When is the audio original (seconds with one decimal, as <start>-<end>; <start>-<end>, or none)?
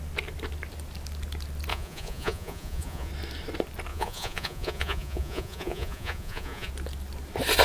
0.0-1.7; 3.1-3.9; 6.7-7.6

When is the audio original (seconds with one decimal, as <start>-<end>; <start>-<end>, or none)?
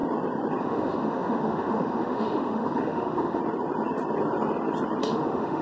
0.0-0.6; 3.4-5.0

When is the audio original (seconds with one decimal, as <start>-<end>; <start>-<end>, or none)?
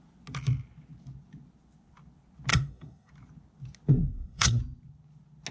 0.0-2.5; 3.1-3.9; 4.6-5.5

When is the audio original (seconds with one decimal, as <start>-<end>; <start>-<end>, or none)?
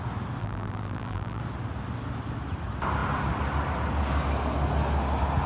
0.0-0.4; 1.4-5.5